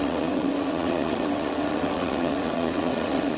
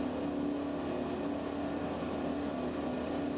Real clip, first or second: second